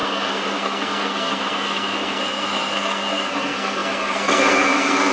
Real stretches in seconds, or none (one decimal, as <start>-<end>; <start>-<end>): none